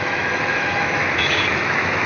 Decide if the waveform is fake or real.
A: fake